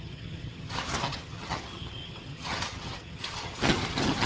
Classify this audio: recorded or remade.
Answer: remade